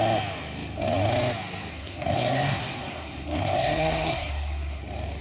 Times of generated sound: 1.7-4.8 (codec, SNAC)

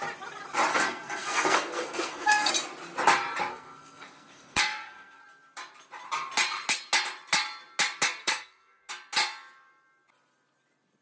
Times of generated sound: 0.7-2.5 (codec, SNAC); 3.5-5.2; 8.2-8.9